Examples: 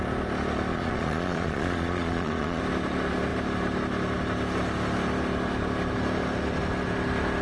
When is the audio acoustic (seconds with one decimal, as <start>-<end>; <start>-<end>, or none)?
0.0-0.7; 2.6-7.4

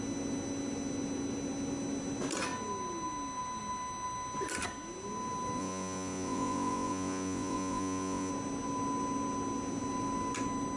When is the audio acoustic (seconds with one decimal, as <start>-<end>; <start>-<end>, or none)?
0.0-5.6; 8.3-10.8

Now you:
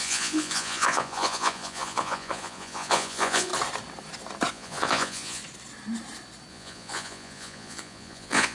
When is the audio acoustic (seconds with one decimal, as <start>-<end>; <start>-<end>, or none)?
3.5-4.5; 5.4-6.5

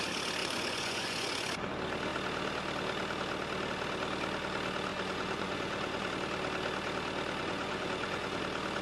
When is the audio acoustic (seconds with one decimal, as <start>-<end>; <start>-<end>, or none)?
0.0-0.4; 1.7-4.9; 6.1-7.4; 8.4-8.8

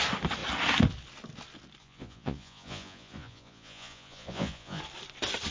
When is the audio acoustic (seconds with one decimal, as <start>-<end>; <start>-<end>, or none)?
0.0-1.8; 4.8-5.5